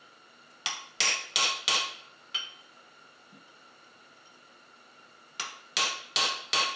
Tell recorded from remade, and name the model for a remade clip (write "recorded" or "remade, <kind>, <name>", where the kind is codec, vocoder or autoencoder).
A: recorded